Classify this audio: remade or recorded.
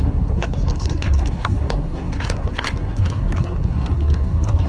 remade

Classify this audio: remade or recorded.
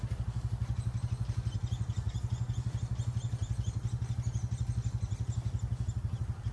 recorded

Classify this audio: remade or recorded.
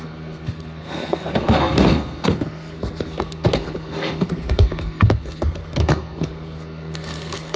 remade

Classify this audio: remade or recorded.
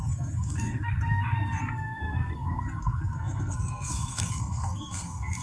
remade